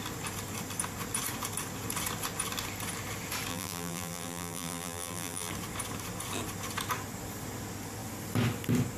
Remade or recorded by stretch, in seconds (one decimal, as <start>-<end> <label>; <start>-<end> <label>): 0.0-3.5 recorded; 3.5-5.5 remade; 5.5-9.0 recorded